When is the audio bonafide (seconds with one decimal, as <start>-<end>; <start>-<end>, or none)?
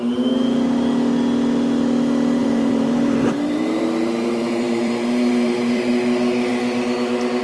0.0-2.4; 5.9-7.4